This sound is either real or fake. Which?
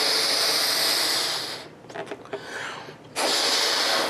real